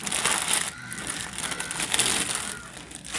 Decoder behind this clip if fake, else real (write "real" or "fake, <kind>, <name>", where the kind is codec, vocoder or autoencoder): real